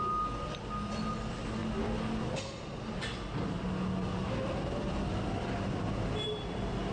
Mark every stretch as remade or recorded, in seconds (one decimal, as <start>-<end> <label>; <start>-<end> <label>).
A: 0.0-6.9 recorded